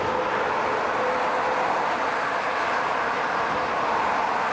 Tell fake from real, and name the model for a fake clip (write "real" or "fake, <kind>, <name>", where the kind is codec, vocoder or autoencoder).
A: real